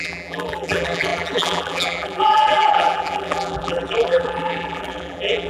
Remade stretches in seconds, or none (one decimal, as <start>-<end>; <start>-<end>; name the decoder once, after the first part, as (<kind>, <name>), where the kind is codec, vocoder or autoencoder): 0.0-5.5 (vocoder, BigVGAN v2)